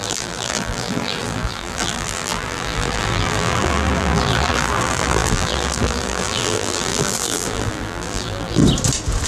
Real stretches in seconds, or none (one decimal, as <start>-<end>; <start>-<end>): 8.6-9.3

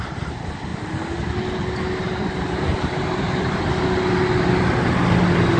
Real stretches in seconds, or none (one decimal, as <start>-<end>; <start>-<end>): 0.0-5.6

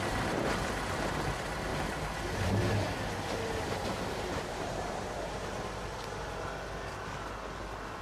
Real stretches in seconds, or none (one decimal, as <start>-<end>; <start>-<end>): 0.0-4.5; 6.4-8.0

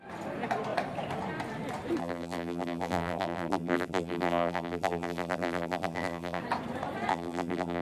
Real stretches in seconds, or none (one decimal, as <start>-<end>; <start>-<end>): 0.0-2.0; 6.4-7.1

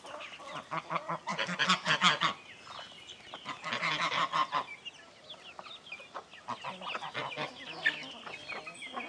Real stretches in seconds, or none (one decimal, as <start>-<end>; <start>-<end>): 0.0-9.1

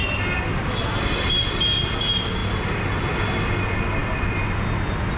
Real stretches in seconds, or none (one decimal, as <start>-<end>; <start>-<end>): 0.0-5.2